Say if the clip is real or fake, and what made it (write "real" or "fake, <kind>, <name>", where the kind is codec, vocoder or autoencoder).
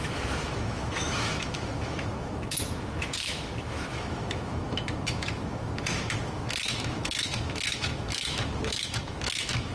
fake, autoencoder, DAC-VAE